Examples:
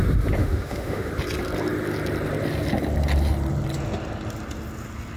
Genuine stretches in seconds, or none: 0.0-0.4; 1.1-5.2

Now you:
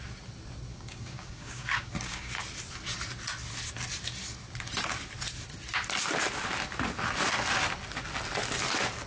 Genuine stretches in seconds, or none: 0.0-0.7; 2.4-9.1

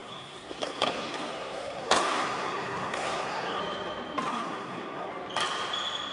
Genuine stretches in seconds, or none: 3.6-4.3; 5.1-6.1

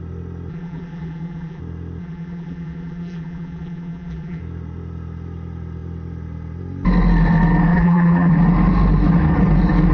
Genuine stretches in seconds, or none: 0.0-0.5; 1.6-2.0; 4.4-7.7; 8.3-9.9

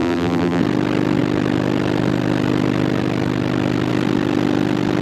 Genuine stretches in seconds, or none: 0.6-5.0